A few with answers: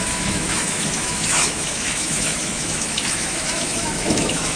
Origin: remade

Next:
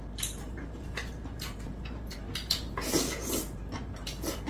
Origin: recorded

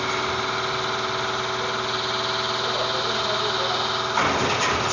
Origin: recorded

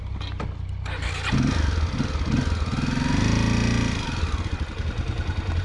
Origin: recorded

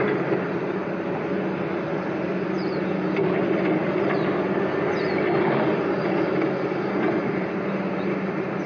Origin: recorded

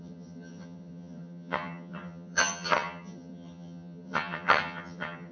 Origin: remade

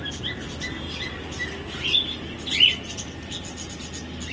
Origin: recorded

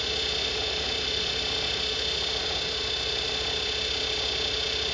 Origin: recorded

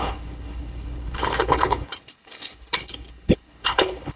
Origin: remade